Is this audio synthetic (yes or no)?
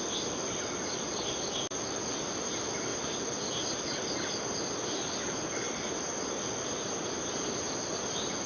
no